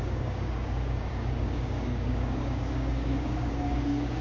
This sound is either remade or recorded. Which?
remade